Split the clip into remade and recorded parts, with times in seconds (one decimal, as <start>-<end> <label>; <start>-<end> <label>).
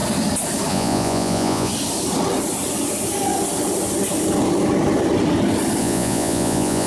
0.0-0.7 recorded; 0.7-1.7 remade; 1.7-5.8 recorded; 5.8-6.9 remade